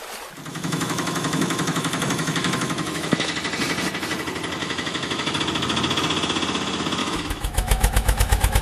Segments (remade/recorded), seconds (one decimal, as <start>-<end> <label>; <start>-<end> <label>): 0.0-0.5 recorded; 0.5-3.3 remade; 3.3-4.6 recorded; 4.6-5.4 remade; 5.4-7.0 recorded; 7.0-8.6 remade